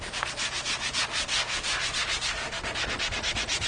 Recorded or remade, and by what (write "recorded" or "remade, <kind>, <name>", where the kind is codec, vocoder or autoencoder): recorded